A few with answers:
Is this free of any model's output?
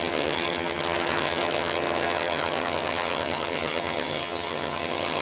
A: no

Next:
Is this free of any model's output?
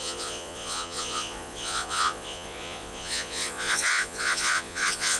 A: no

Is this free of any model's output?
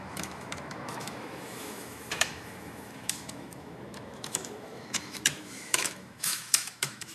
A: no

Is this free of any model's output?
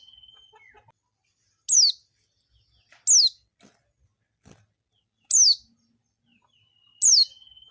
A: yes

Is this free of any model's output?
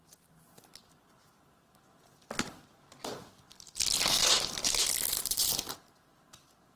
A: yes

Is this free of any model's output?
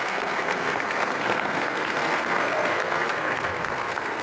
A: no